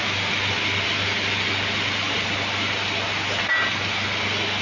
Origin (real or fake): real